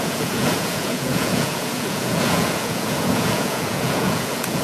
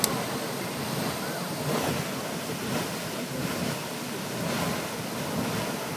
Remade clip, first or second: first